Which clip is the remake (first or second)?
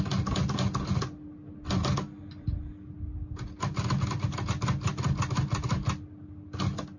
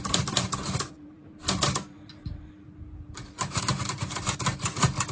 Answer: second